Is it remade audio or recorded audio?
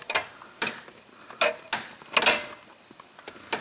recorded